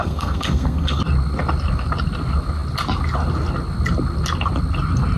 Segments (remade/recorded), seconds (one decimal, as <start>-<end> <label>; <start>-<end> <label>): 0.0-1.0 remade; 1.0-5.2 recorded